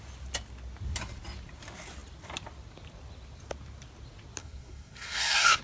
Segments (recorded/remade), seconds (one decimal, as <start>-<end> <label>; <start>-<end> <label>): 0.0-4.4 recorded; 4.4-5.6 remade